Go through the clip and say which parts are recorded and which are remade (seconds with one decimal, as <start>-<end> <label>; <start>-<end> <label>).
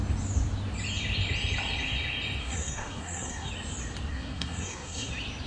0.0-2.4 recorded; 2.4-3.5 remade; 3.5-4.1 recorded; 4.1-5.1 remade; 5.1-5.5 recorded